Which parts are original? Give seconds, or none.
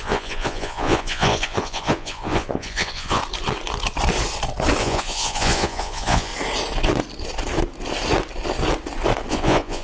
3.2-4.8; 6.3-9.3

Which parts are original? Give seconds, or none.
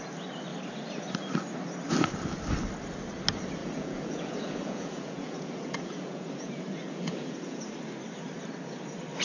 0.0-3.6; 7.6-9.2